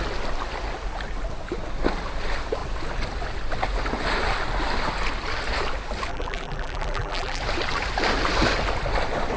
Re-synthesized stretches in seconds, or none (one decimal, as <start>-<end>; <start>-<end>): 6.1-7.4